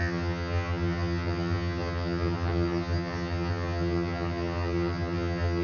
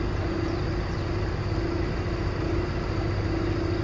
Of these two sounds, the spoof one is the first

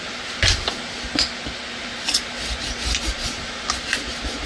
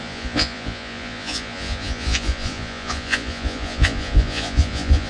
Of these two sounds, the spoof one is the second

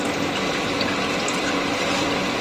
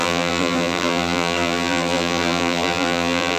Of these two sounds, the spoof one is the second